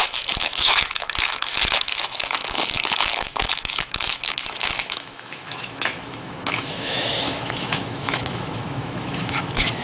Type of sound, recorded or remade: remade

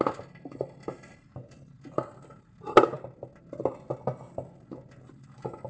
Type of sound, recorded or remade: recorded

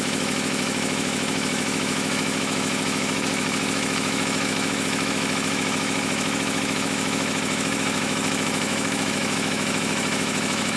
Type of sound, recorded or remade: remade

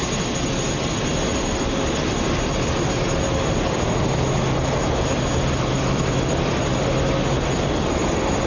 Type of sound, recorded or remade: recorded